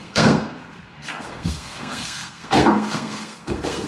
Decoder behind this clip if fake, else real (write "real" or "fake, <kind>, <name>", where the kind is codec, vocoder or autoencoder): fake, codec, SNAC